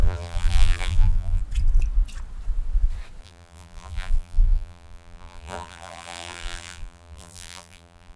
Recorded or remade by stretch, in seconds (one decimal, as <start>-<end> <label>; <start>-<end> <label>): 0.0-1.4 remade; 1.4-3.2 recorded; 3.2-8.2 remade